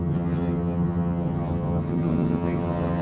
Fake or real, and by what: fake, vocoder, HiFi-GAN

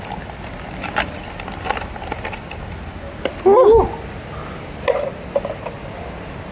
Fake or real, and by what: real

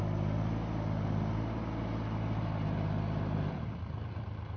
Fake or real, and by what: real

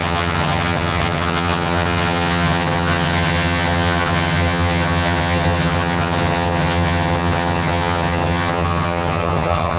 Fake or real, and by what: fake, vocoder, HiFi-GAN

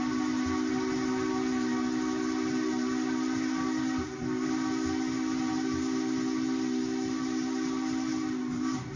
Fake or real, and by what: real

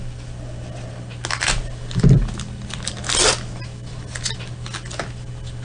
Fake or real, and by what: real